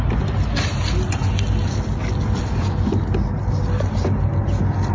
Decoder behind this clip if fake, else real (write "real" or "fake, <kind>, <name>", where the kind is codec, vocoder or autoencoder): real